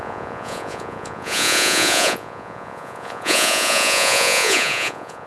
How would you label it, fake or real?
fake